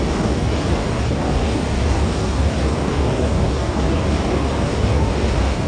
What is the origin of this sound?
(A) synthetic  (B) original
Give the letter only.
A